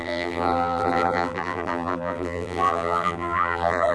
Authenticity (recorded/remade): remade